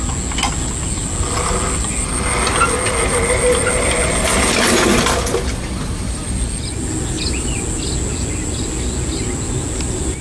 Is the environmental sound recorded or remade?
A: recorded